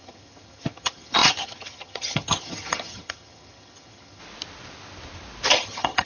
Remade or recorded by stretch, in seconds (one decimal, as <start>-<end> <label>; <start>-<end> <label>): 0.0-4.2 remade; 4.2-5.5 recorded; 5.5-6.1 remade